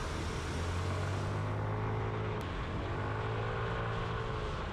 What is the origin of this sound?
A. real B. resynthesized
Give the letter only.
A